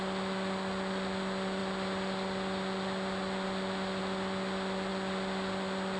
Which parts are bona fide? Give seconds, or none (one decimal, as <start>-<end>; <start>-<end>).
0.0-6.0